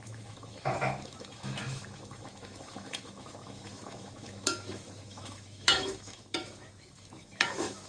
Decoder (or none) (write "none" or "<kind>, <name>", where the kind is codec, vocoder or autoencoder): autoencoder, DAC-VAE